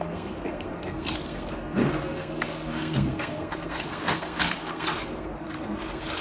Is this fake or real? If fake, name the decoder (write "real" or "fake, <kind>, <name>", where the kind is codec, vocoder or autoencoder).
fake, codec, SNAC